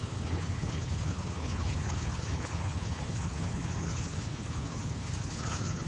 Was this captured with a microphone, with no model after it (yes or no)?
no